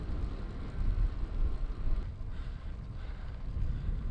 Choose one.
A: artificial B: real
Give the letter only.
B